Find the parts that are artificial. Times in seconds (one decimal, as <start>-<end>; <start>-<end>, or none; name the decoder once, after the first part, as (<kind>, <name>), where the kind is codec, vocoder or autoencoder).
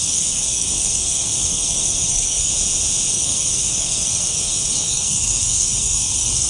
0.0-2.5 (codec, SNAC); 3.1-6.5